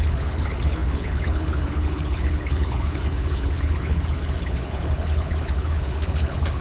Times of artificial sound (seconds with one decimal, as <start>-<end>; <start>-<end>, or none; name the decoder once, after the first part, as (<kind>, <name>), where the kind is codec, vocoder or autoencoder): 0.0-6.6 (codec, HILCodec)